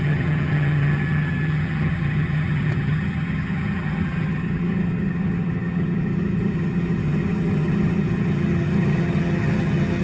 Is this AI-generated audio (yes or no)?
yes